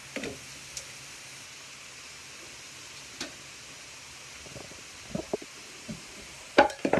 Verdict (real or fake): real